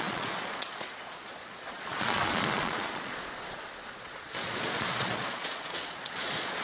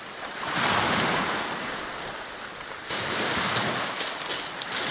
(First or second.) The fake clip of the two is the first